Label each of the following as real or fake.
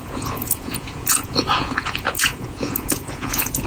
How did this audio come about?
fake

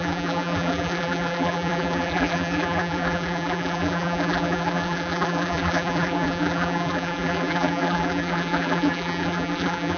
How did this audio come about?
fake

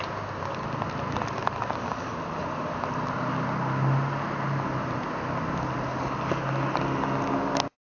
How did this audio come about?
real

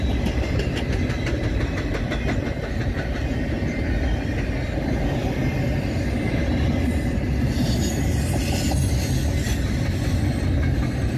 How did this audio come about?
real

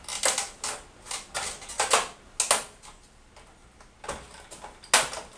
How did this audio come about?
real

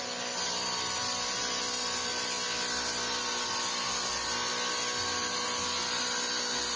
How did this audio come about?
real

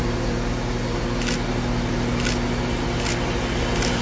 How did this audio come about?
real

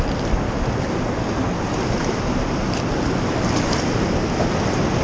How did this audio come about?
real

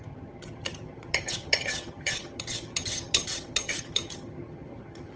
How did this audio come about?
fake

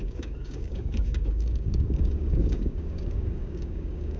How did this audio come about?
fake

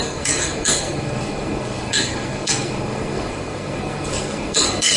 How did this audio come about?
fake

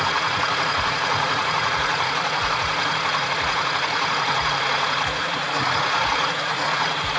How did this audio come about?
fake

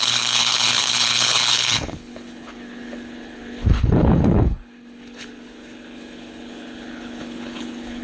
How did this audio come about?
fake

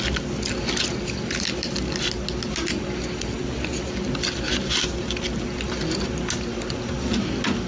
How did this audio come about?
real